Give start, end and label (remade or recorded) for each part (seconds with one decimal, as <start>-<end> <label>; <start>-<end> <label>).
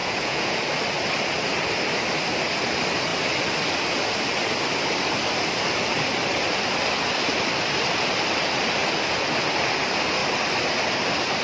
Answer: 0.0-0.6 remade; 0.6-11.4 recorded